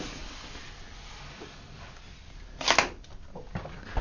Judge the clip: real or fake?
real